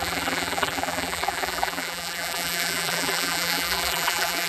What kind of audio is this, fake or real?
fake